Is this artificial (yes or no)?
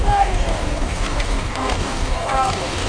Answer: yes